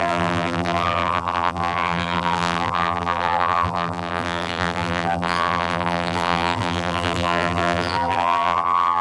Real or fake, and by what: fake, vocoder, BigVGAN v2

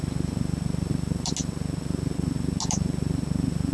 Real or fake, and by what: real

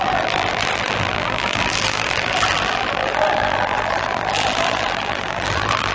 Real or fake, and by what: fake, vocoder, BigVGAN v2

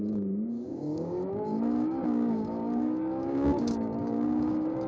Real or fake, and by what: fake, codec, DAC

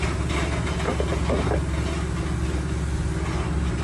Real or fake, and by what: real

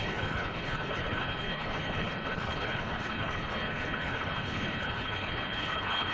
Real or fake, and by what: fake, codec, HILCodec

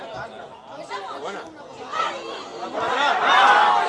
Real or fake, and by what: real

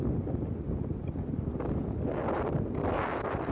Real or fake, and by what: real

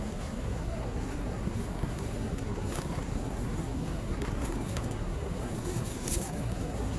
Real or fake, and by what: fake, codec, SNAC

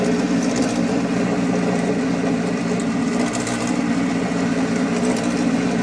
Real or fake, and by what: real